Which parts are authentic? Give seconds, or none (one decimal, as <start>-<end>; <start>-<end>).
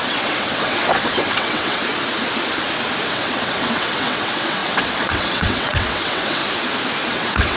1.8-3.1; 6.4-7.1